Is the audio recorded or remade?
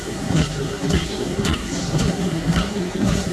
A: remade